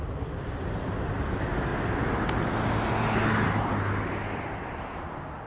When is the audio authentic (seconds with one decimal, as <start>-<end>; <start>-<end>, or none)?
0.0-5.5